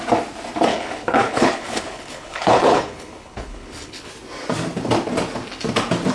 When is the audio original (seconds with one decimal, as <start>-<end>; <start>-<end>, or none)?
0.0-0.7; 4.1-6.1